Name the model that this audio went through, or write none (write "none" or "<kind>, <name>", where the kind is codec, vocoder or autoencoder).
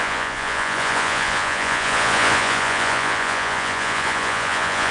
vocoder, Vocos